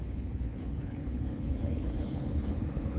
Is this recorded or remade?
remade